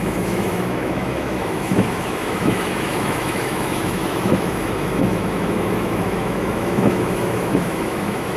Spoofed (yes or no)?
yes